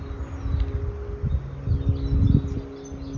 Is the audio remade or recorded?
recorded